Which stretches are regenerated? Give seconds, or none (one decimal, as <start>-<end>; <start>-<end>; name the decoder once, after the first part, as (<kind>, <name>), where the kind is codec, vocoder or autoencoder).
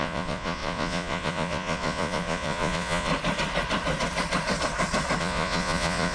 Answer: 0.0-3.1 (vocoder, Vocos); 5.2-6.1